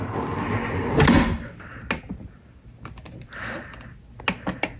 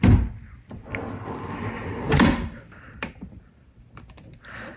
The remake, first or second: second